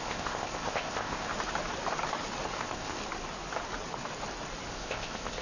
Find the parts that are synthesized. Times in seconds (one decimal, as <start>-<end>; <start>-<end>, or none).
0.0-1.3; 2.6-3.0; 4.7-5.4